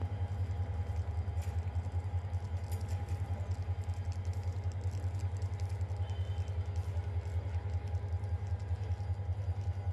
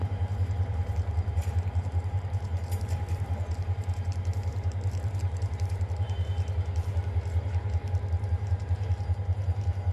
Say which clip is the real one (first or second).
first